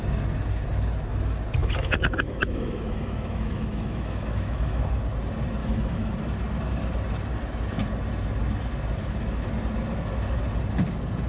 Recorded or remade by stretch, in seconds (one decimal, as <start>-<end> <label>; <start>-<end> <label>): 0.0-1.6 recorded; 1.6-4.8 remade; 4.8-5.6 recorded; 5.6-6.1 remade; 6.1-11.3 recorded